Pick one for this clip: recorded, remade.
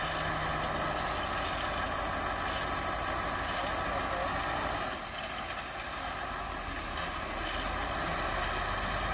recorded